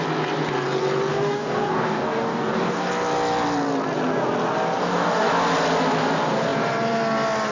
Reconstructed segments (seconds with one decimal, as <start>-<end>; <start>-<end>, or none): 1.1-2.9; 4.8-5.3